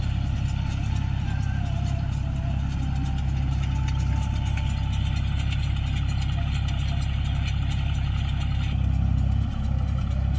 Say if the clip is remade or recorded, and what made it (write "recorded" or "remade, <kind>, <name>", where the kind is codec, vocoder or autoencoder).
recorded